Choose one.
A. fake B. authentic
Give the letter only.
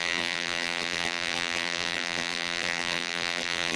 A